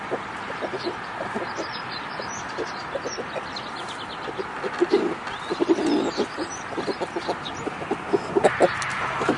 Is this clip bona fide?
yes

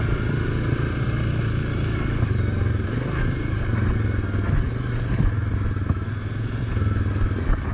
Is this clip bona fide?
yes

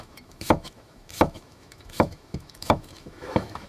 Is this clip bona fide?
no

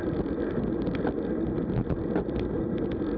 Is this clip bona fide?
yes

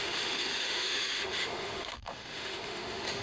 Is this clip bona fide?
no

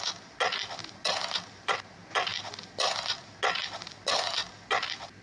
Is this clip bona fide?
yes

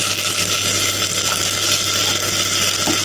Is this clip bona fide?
yes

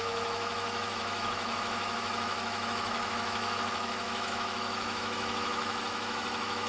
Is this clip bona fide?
no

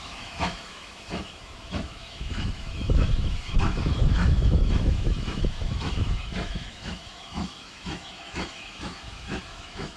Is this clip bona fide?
no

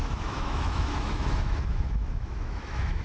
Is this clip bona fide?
no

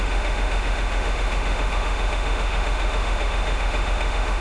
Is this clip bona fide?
no